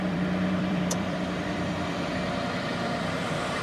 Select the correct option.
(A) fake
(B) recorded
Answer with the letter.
A